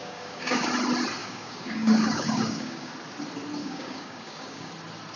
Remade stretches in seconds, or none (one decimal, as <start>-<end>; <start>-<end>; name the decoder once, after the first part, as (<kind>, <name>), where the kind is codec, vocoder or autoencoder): 0.0-0.7 (codec, DAC); 1.2-2.9; 3.6-4.7